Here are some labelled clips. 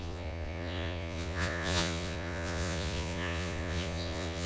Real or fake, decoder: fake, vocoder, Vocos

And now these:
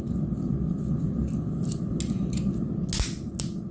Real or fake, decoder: real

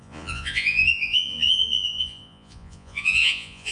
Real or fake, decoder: fake, vocoder, Vocos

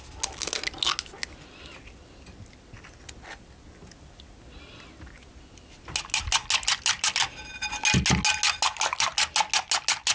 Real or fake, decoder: real